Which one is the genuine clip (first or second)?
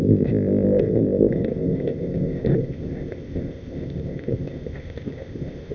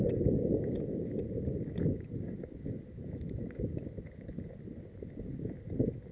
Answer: second